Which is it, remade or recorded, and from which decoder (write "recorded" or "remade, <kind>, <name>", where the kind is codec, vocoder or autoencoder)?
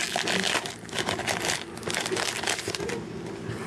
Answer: recorded